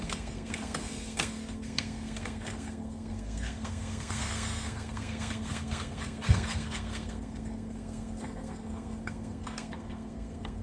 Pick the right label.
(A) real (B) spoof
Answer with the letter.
B